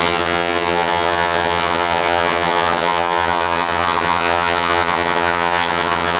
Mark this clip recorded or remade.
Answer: remade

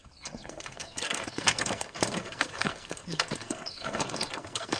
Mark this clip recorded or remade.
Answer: remade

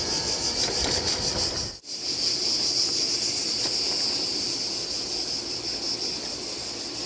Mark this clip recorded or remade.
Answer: recorded